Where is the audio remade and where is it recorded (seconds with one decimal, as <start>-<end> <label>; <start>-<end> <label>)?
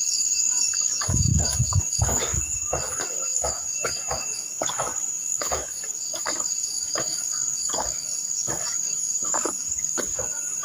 0.0-10.6 remade